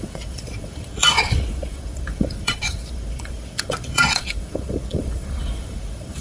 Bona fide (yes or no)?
no